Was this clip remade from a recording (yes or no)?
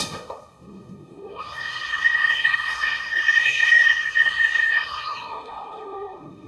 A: yes